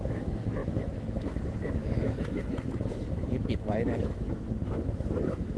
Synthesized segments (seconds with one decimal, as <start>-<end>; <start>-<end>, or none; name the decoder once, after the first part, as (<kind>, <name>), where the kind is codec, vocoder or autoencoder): 0.0-5.6 (autoencoder, DAC-VAE)